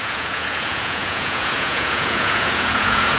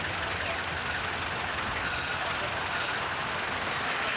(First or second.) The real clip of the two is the second